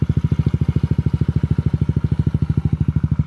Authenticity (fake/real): real